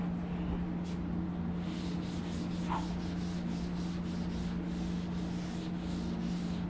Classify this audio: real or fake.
real